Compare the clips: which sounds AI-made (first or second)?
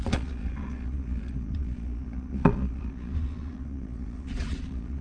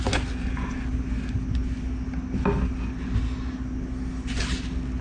first